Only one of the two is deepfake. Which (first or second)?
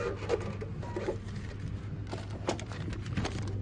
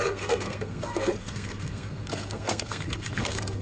second